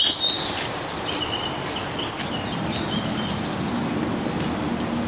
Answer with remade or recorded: recorded